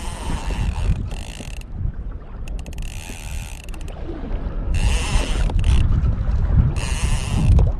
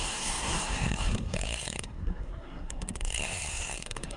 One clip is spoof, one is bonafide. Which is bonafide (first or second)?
first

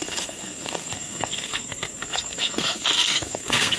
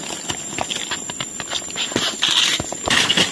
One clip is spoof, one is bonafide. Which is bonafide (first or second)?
second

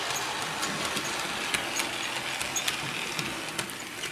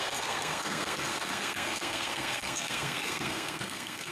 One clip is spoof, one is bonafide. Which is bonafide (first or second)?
first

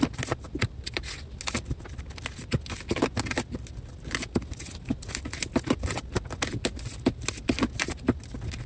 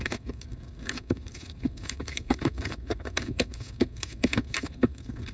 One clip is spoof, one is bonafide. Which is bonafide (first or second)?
first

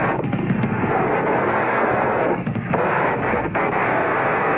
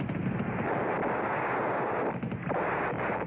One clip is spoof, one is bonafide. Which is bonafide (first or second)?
second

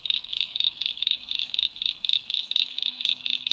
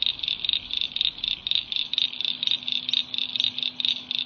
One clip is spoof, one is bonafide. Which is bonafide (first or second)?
second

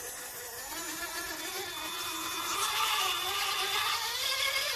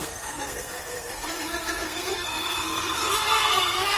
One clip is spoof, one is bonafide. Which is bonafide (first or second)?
first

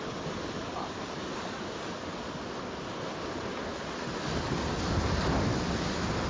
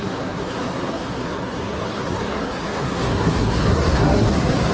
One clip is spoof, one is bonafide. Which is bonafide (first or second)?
first